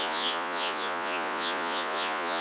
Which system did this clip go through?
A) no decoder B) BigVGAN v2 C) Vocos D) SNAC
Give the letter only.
C